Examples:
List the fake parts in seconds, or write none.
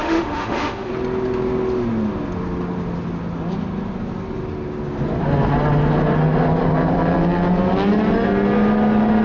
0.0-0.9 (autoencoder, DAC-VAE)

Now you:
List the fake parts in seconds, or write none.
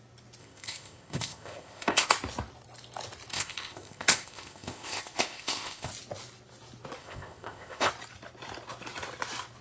0.4-2.1 (codec, ZipCodec); 3.3-5.9; 7.0-7.9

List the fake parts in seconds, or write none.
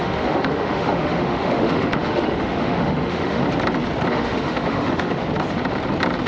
0.0-3.4 (autoencoder, DAC-VAE); 4.1-5.2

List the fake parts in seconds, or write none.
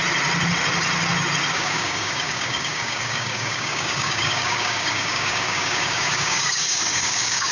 1.5-7.5 (codec, DAC)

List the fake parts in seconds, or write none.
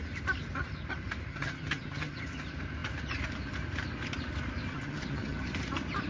1.3-2.2 (vocoder, HiFi-GAN); 4.7-5.5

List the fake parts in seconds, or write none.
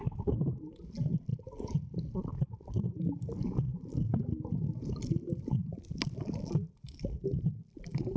none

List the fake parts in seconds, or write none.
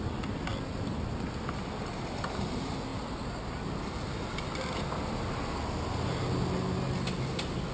none